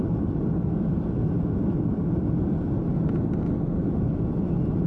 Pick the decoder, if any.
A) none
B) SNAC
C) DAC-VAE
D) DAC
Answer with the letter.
A